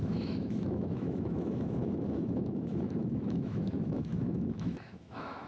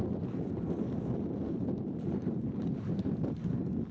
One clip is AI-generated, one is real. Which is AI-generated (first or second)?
first